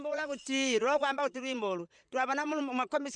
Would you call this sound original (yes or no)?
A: no